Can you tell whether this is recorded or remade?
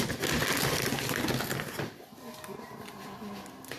recorded